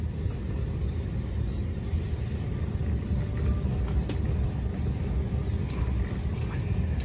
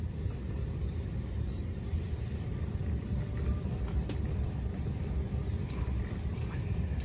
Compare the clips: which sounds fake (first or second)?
second